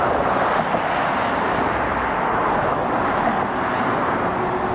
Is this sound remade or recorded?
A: recorded